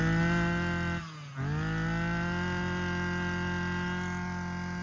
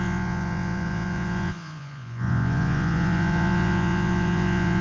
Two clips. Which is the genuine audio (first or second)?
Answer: first